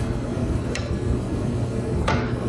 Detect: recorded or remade remade